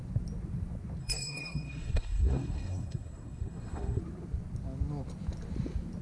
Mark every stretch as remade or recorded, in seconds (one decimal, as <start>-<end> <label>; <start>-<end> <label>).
0.0-1.0 recorded; 1.0-4.0 remade; 4.0-6.0 recorded